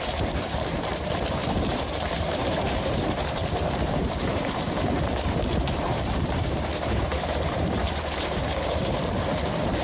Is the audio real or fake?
fake